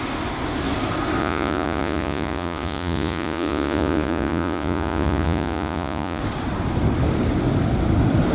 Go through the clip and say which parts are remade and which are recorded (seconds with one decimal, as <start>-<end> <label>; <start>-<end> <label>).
0.0-1.2 recorded; 1.2-6.2 remade; 6.2-8.3 recorded